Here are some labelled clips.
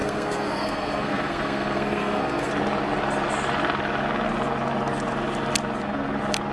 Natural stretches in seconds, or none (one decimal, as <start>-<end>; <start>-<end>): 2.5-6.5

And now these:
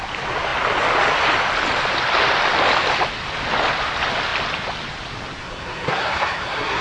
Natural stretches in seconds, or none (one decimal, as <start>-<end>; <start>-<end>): 0.0-5.4

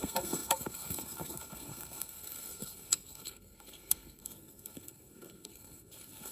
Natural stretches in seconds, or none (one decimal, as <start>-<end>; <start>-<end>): none